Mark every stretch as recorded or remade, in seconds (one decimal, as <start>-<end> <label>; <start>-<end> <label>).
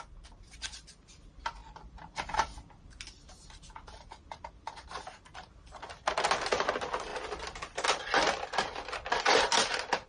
0.0-10.1 recorded